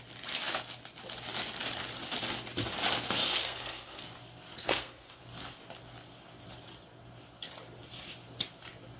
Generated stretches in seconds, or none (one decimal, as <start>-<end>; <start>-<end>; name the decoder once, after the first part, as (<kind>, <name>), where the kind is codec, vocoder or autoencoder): 3.2-4.0 (codec, SNAC); 4.6-5.2